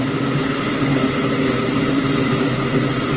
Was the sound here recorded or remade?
recorded